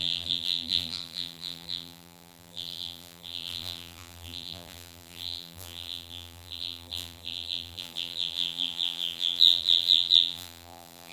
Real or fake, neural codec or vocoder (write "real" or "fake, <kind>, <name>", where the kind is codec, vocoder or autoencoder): fake, vocoder, BigVGAN v2